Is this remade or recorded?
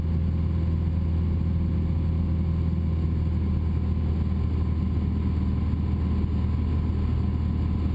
recorded